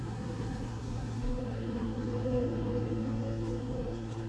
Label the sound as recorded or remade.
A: remade